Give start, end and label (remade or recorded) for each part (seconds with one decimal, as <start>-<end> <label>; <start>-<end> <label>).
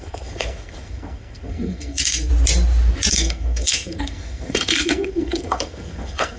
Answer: 0.0-2.3 remade; 2.3-3.1 recorded; 3.1-6.4 remade